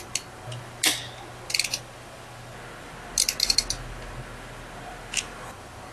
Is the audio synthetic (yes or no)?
no